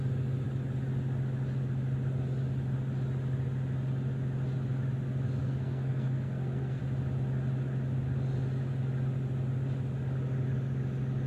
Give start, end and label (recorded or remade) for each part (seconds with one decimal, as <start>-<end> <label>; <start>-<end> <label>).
0.0-5.4 recorded; 5.4-6.8 remade; 6.8-11.3 recorded

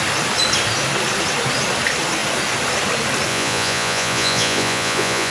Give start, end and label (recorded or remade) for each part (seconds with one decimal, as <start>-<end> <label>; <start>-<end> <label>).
0.0-3.3 recorded; 3.3-5.3 remade

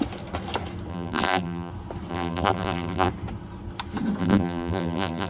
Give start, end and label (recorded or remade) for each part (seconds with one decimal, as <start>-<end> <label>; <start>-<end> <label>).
0.0-0.9 recorded; 0.9-1.7 remade; 1.7-2.1 recorded; 2.1-3.1 remade; 3.1-4.2 recorded; 4.2-5.3 remade

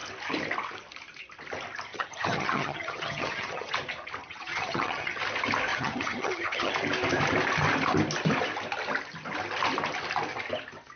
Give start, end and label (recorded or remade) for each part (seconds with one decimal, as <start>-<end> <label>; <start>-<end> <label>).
0.0-1.9 recorded; 1.9-3.7 remade; 3.7-4.2 recorded; 4.2-5.2 remade; 5.2-5.7 recorded; 5.7-6.7 remade; 6.7-11.0 recorded